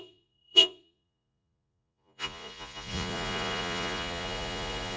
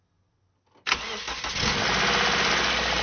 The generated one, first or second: first